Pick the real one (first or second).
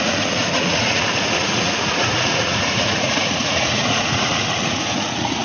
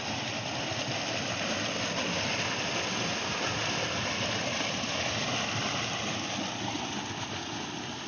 second